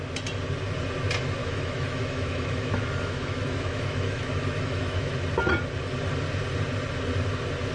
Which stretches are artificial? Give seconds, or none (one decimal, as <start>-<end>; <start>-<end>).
1.4-5.1